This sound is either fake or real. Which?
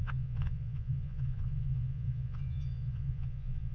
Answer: fake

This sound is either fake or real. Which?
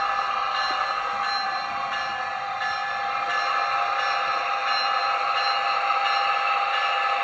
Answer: real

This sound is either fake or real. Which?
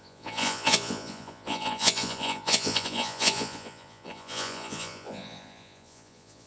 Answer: fake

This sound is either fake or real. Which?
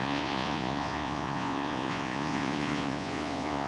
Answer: fake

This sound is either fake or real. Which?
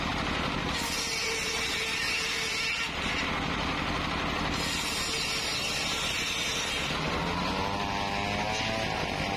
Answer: real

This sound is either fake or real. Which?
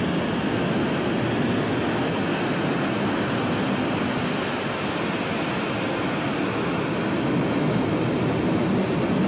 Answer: real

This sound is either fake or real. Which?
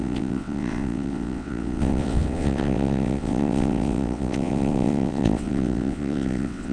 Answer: fake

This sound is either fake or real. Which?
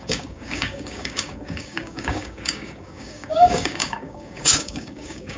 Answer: fake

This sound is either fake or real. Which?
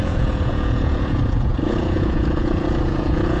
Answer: fake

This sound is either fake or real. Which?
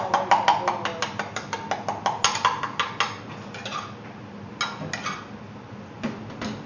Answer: real